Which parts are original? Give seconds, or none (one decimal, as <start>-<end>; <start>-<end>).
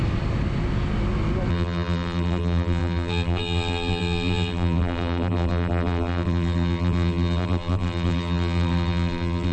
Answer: 0.0-1.5